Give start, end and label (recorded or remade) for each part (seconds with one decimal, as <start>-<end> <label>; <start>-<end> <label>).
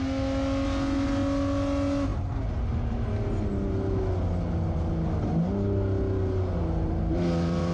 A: 0.0-7.7 recorded